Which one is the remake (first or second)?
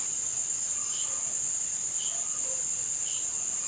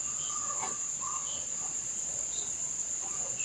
second